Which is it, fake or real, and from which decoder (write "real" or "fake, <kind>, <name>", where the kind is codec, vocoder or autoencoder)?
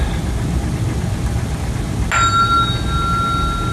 real